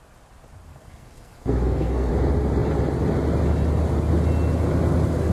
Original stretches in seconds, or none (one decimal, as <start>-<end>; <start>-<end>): 0.0-0.7; 2.1-5.3